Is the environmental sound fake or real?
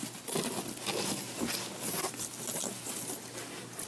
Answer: real